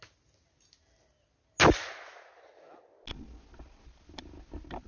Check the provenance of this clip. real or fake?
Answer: real